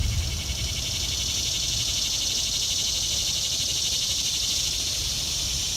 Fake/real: real